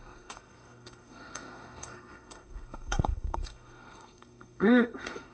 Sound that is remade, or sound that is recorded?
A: remade